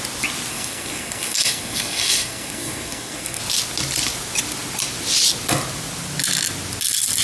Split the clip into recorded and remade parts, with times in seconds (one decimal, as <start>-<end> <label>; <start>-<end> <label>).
0.0-0.5 recorded; 0.5-3.4 remade; 3.4-7.2 recorded